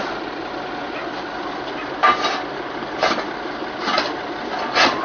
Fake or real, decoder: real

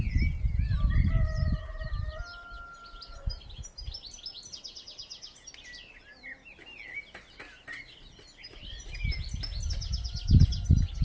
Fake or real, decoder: real